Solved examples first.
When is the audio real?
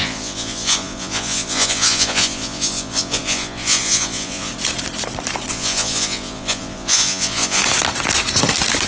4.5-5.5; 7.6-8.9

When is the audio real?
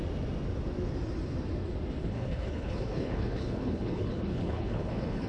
0.0-2.0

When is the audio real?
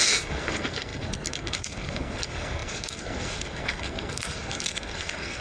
none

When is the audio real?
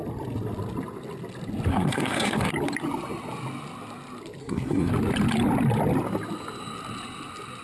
0.0-1.7; 2.5-4.4; 4.9-7.6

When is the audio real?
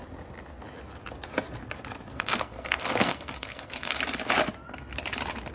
0.0-2.1; 4.0-5.5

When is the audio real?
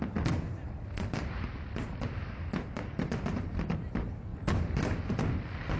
0.0-5.8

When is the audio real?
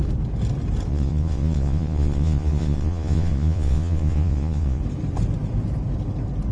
0.0-0.9; 4.8-6.5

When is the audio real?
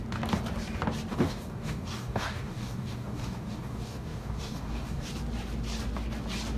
0.0-1.1; 5.1-6.6